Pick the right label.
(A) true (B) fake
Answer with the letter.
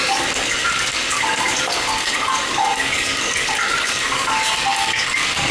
B